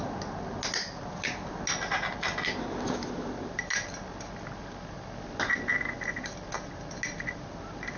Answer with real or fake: real